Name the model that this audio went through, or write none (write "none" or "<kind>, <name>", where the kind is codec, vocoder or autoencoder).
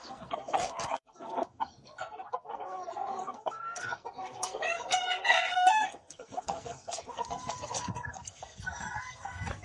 codec, SNAC